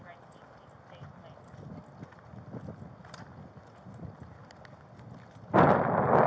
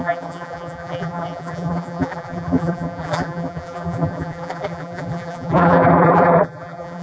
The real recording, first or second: first